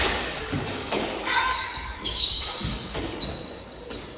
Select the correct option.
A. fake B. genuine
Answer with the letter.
A